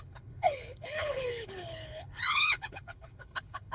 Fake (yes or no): yes